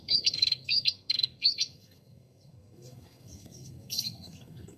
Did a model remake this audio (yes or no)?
yes